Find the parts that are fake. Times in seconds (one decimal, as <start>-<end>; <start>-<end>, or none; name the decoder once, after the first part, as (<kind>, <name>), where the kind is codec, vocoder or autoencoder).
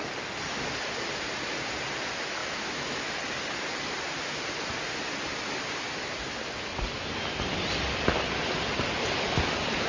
2.4-3.1 (autoencoder, DAC-VAE)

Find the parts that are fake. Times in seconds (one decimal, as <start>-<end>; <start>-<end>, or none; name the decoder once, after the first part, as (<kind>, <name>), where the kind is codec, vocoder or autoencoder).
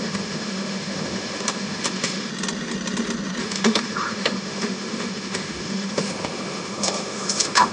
0.0-2.3 (autoencoder, DAC-VAE); 3.4-7.7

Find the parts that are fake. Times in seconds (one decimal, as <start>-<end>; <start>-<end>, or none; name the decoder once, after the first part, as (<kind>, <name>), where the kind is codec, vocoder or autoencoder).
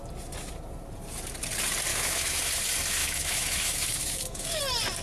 1.9-2.5 (autoencoder, DAC-VAE); 3.0-4.6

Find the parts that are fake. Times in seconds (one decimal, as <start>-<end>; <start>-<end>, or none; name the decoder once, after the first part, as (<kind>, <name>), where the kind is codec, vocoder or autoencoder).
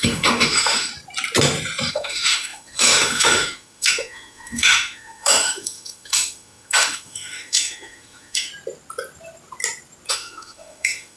0.0-0.9 (autoencoder, DAC-VAE); 1.9-8.5; 10.1-11.2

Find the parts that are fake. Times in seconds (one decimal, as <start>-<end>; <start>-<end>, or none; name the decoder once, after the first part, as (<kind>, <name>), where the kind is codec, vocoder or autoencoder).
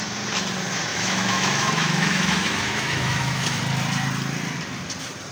0.9-3.6 (autoencoder, DAC-VAE)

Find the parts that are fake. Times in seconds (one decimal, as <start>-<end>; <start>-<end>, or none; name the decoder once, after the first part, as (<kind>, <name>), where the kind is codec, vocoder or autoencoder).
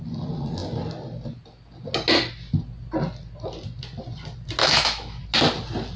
4.6-5.2 (autoencoder, DAC-VAE)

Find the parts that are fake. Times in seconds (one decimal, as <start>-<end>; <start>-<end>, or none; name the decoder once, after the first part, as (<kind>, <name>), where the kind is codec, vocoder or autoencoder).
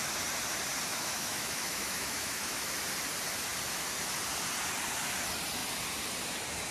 0.9-2.7 (autoencoder, DAC-VAE)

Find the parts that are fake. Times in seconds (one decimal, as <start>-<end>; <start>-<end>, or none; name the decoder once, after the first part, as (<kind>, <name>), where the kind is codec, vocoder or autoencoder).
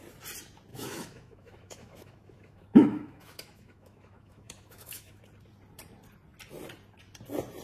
0.7-5.2 (autoencoder, DAC-VAE)